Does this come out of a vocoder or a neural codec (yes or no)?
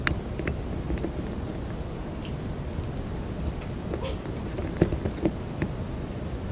no